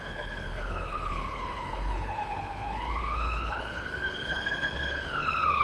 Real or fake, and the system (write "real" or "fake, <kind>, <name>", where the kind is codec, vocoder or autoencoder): fake, codec, HILCodec